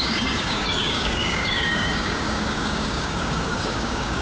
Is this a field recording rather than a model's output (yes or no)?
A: no